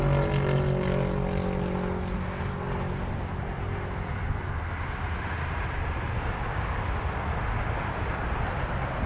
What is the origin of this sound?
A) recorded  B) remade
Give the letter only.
A